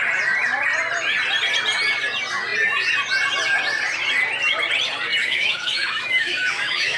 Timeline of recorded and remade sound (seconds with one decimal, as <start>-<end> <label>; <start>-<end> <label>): 0.0-5.2 recorded; 5.2-7.0 remade